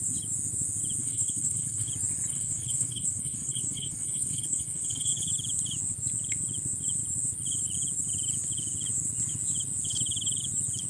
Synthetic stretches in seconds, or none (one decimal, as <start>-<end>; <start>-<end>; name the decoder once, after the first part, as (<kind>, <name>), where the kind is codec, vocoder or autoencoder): 1.0-1.9 (codec, HILCodec); 2.3-5.3